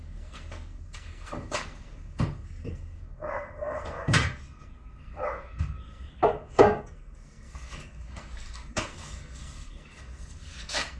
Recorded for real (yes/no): no